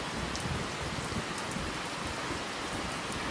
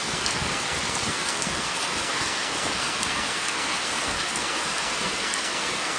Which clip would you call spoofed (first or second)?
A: second